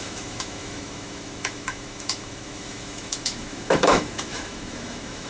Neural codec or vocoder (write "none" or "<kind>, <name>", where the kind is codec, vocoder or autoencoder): autoencoder, DAC-VAE